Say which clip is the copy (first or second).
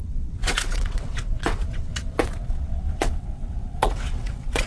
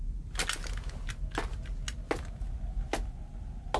first